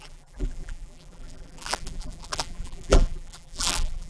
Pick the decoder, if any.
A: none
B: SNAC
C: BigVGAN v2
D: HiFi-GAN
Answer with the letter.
C